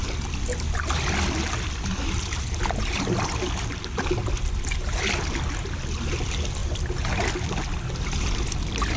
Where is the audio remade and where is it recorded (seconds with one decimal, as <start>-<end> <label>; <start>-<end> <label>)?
0.0-9.0 recorded